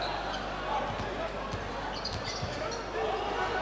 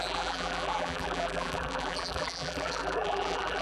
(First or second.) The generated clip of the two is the second